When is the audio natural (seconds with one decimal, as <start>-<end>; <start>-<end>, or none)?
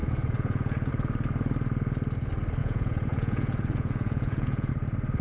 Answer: 0.9-2.6; 4.7-5.2